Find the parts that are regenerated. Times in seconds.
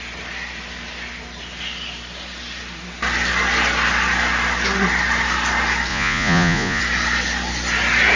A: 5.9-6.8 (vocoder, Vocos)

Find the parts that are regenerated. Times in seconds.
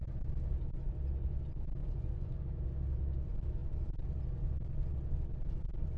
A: 1.8-2.4 (vocoder, Vocos)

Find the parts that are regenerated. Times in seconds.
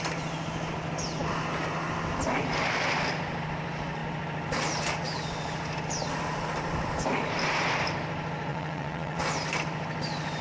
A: 8.5-9.2 (vocoder, WaveNeXt)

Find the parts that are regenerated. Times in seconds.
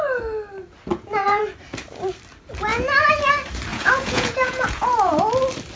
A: 0.9-1.4 (vocoder, Vocos); 2.7-3.3; 3.7-5.2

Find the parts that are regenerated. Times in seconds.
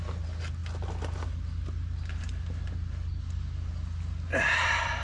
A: none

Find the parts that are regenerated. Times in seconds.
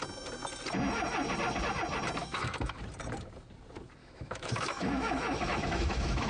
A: 2.2-2.8 (autoencoder, DAC-VAE); 4.0-6.3